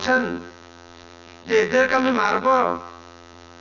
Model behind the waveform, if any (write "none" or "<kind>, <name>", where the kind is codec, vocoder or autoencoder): vocoder, BigVGAN v2